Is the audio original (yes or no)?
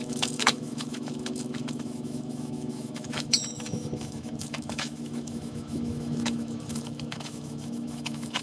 no